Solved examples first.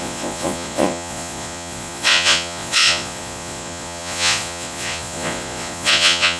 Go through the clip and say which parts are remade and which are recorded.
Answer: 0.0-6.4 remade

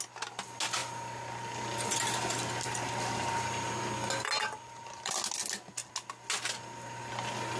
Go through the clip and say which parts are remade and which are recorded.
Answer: 0.0-7.6 recorded

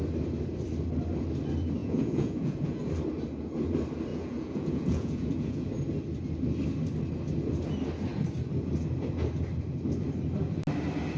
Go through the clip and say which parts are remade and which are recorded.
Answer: 0.0-1.8 recorded; 1.8-2.8 remade; 2.8-4.1 recorded; 4.1-5.7 remade; 5.7-11.2 recorded

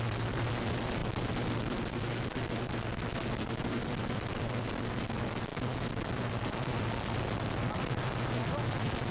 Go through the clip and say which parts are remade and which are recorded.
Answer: 0.0-9.1 recorded

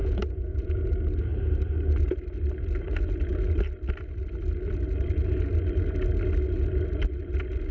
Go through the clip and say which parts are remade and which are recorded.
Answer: 0.0-0.9 remade; 0.9-7.7 recorded

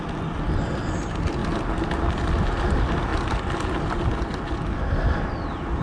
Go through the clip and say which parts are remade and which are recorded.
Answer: 0.0-5.8 recorded

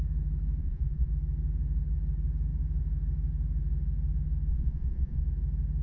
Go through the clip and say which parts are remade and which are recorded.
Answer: 0.0-0.6 recorded; 0.6-1.1 remade; 1.1-4.5 recorded; 4.5-5.2 remade; 5.2-5.8 recorded